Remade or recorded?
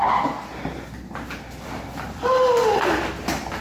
recorded